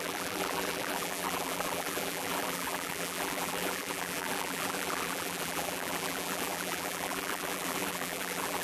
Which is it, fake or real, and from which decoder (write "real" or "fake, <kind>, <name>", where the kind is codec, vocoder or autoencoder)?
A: fake, vocoder, BigVGAN v2